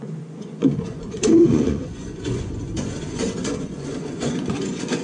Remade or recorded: remade